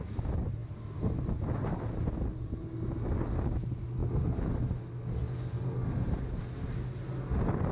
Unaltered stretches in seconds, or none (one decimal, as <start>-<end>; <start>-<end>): 0.0-0.6; 1.3-7.7